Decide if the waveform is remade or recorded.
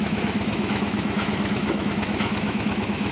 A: remade